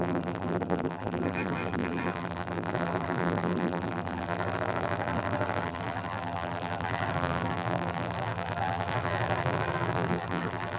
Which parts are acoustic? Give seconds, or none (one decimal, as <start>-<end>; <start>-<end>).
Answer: none